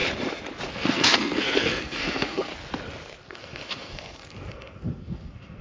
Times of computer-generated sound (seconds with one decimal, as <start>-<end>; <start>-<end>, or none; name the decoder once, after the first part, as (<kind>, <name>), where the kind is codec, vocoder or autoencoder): 0.7-2.5 (codec, SNAC); 3.3-5.6